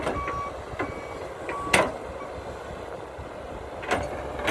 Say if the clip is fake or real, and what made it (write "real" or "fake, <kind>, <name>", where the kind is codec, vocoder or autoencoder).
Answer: real